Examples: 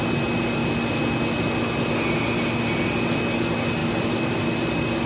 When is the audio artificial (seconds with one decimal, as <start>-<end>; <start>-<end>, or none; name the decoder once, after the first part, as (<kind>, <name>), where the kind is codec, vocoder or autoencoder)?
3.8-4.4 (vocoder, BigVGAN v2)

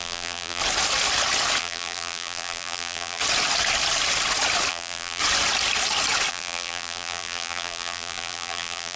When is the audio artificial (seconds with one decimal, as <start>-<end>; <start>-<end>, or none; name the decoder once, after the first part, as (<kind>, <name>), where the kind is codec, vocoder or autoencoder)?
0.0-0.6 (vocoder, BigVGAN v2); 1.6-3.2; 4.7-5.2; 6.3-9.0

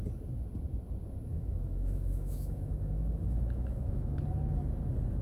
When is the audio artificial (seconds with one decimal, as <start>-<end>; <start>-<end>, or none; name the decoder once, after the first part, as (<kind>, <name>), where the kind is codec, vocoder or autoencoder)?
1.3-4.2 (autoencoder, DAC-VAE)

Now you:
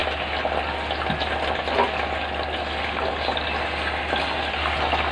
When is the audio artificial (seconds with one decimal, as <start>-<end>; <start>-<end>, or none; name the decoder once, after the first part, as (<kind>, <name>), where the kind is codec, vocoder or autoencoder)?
none